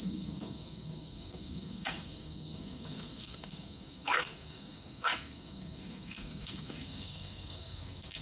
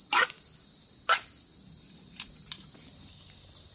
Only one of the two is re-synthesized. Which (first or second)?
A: first